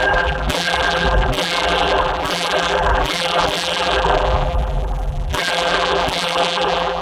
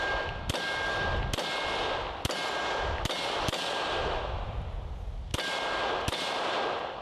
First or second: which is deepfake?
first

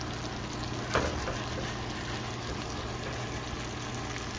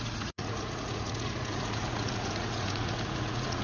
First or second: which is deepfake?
second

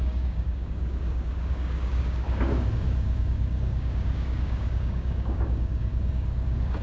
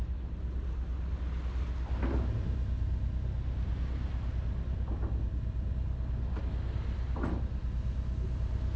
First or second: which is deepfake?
first